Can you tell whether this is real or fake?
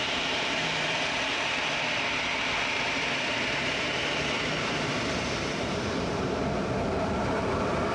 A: fake